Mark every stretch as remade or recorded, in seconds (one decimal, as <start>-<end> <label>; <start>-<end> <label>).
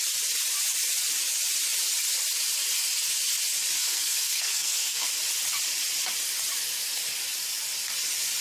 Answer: 0.0-3.8 recorded; 3.8-5.1 remade; 5.1-8.4 recorded